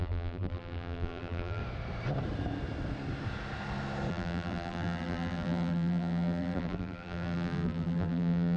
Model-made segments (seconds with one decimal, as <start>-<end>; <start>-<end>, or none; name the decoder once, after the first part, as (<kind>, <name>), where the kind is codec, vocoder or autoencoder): 0.0-1.6 (vocoder, BigVGAN v2); 4.1-8.6

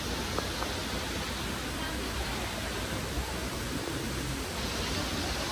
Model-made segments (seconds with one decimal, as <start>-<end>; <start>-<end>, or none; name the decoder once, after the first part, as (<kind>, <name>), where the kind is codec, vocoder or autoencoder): 3.4-4.1 (vocoder, BigVGAN v2)